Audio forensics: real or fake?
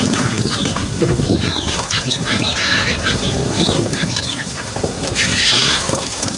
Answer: fake